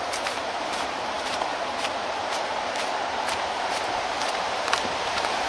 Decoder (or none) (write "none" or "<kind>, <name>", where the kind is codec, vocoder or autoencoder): vocoder, BigVGAN v2